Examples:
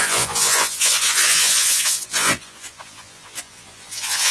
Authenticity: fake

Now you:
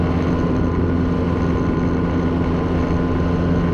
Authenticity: real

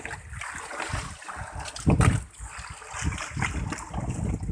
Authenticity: real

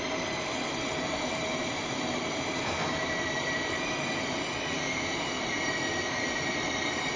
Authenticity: fake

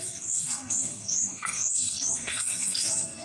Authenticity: fake